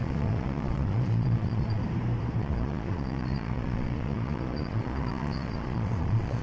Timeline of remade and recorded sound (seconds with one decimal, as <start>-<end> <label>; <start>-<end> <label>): 0.0-1.8 remade; 1.8-2.4 recorded; 2.4-6.4 remade